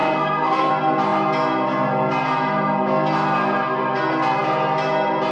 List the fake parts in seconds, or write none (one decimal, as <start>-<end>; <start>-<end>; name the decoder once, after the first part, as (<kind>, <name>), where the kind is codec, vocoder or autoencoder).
0.0-0.7 (codec, SNAC)